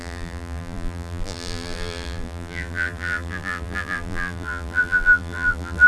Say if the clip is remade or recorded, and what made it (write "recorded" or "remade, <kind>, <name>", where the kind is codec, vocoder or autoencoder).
remade, vocoder, BigVGAN v2